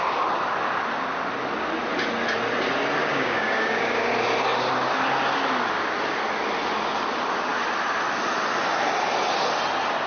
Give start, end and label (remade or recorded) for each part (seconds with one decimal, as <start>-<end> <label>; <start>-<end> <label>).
0.0-3.0 recorded; 3.0-4.1 remade; 4.1-10.1 recorded